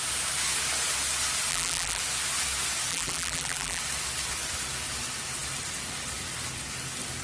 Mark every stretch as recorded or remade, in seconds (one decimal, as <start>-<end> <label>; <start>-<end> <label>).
0.0-1.5 recorded; 1.5-2.0 remade; 2.0-2.9 recorded; 2.9-3.8 remade; 3.8-7.2 recorded